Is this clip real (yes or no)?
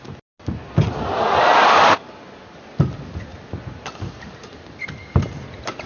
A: yes